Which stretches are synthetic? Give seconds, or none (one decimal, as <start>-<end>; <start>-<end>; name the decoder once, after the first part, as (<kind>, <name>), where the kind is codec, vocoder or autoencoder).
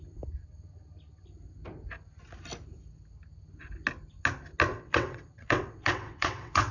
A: 4.7-6.7 (vocoder, WaveNeXt)